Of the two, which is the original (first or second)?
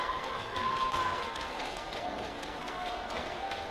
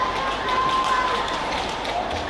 second